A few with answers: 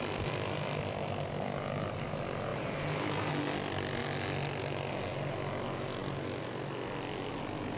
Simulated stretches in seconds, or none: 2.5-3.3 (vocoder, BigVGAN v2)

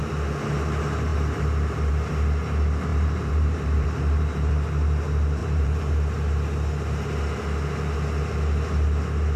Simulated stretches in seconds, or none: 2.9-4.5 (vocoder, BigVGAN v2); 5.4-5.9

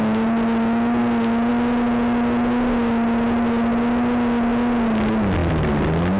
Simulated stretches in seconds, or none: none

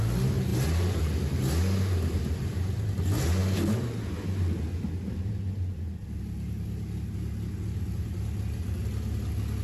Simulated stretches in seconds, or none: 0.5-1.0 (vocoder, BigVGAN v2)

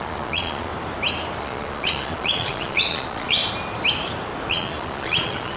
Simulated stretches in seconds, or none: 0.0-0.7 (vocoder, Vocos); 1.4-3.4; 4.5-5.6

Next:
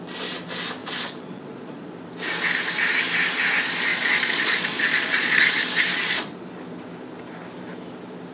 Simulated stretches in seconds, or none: 0.8-1.9 (vocoder, Vocos); 3.9-5.4; 5.9-6.5